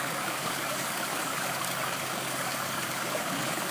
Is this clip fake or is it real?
fake